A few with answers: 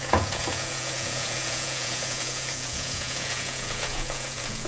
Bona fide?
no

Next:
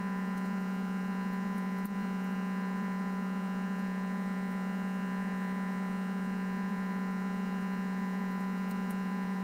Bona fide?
no